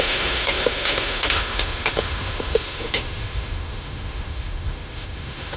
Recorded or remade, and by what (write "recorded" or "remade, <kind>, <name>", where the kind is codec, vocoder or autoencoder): remade, autoencoder, DAC-VAE